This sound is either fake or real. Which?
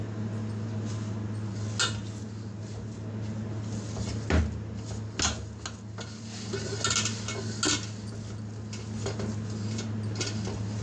real